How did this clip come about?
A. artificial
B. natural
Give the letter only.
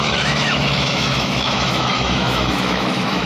A